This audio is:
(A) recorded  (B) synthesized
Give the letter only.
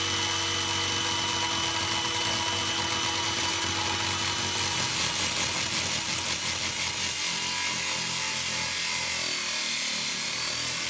A